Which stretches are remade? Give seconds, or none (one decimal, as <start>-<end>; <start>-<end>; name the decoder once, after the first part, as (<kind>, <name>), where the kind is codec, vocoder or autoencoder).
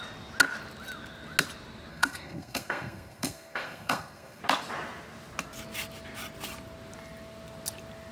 1.9-4.4 (codec, SNAC)